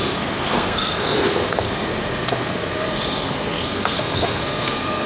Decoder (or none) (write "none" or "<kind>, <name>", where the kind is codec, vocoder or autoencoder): codec, SNAC